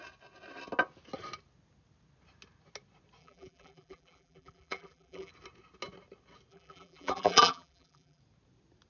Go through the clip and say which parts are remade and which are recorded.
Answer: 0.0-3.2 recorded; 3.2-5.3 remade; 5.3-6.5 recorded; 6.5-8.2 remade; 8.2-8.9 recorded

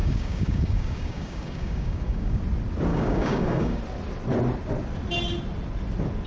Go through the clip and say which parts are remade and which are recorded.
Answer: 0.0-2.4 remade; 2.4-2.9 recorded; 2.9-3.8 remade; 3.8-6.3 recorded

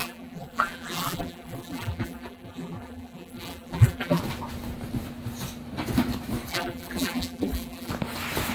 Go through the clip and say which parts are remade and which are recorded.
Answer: 0.0-4.2 remade; 4.2-6.5 recorded; 6.5-7.9 remade; 7.9-8.5 recorded

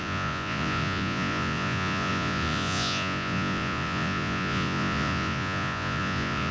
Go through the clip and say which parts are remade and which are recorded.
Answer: 0.0-6.5 remade

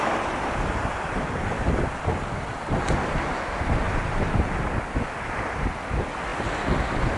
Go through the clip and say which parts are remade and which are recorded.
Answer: 0.0-7.2 recorded